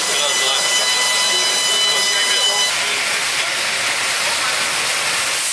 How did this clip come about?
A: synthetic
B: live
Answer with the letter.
B